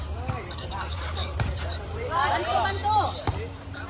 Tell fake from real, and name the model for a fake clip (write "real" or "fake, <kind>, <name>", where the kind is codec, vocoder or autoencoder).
fake, vocoder, BigVGAN v2